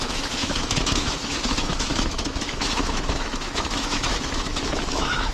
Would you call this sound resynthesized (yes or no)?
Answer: yes